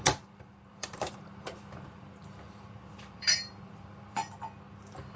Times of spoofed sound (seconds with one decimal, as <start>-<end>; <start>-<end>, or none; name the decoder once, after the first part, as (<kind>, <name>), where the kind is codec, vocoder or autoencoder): 0.0-4.2 (vocoder, BigVGAN v2); 4.8-5.2